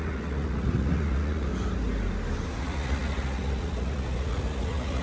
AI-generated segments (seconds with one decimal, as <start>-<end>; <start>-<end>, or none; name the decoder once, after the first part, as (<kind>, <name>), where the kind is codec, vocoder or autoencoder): 0.0-1.5 (vocoder, Vocos); 2.6-5.0